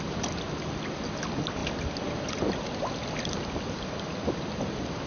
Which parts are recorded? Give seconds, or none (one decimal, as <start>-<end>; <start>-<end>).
0.0-5.1